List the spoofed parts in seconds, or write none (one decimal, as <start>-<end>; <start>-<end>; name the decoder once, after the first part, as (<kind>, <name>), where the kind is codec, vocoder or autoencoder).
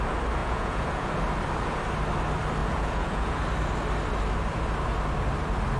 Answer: 0.4-1.1 (vocoder, Vocos); 2.6-3.4